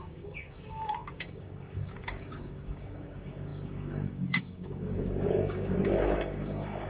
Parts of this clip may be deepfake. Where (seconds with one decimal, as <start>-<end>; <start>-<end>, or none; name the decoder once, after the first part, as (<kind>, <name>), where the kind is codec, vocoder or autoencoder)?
0.0-6.9 (codec, DAC)